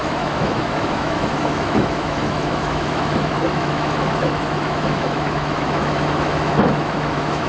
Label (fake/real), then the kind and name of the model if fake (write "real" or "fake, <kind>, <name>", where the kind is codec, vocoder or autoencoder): fake, autoencoder, DAC-VAE